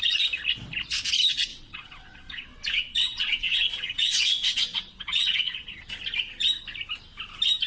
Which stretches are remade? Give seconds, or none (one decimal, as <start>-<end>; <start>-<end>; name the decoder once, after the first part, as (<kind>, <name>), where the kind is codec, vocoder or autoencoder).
1.5-5.8 (vocoder, WaveNeXt)